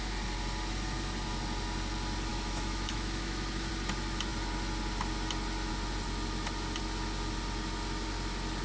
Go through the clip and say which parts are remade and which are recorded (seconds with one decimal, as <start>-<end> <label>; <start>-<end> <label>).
0.0-2.3 recorded; 2.3-3.7 remade; 3.7-8.6 recorded